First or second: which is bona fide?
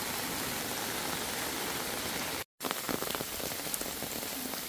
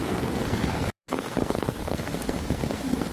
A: first